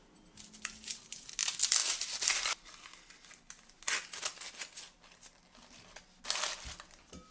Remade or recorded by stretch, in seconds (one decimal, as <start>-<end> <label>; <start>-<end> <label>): 0.0-7.3 recorded